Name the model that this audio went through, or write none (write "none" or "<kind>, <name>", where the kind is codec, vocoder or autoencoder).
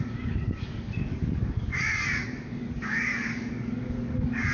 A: codec, DAC